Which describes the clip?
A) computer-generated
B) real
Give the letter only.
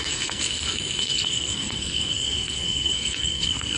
A